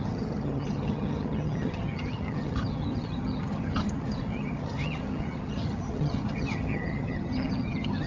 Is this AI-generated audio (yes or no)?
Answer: yes